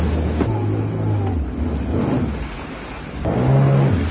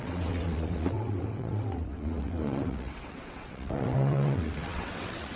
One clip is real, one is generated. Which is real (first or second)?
first